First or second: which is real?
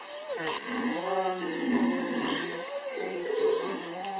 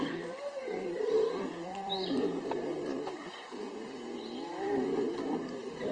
first